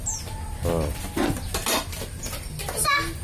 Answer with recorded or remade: recorded